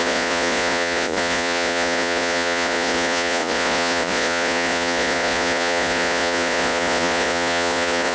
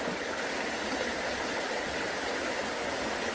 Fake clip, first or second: first